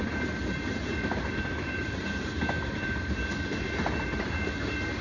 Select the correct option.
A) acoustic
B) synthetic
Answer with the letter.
A